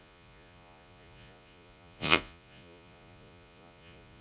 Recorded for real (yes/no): no